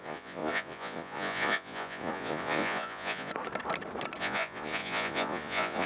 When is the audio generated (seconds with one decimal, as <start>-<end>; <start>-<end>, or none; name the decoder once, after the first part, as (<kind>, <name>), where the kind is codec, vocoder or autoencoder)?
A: 0.0-3.3 (vocoder, Vocos); 4.2-5.9